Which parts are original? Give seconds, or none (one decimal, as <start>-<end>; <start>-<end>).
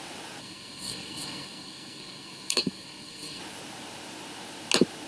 0.0-0.4; 3.4-5.1